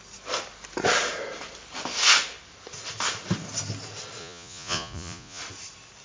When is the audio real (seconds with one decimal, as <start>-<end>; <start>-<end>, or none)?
0.0-4.2; 5.4-6.0